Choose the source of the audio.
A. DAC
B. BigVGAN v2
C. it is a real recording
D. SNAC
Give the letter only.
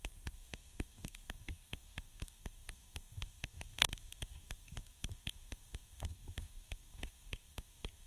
A